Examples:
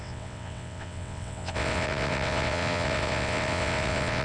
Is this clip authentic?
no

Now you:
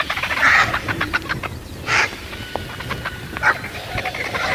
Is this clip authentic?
yes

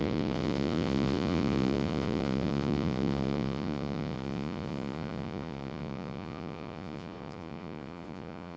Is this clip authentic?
no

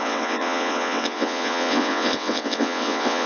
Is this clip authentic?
no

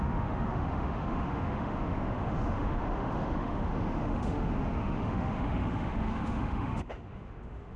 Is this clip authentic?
no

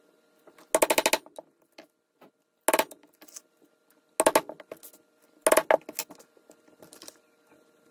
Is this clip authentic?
yes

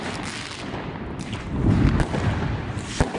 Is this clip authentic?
yes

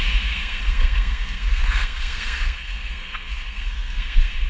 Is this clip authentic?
no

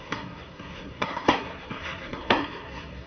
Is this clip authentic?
no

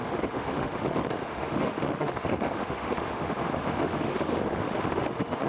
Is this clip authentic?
no